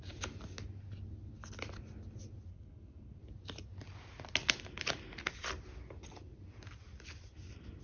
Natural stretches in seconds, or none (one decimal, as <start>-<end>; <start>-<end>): 0.0-2.5; 3.2-7.8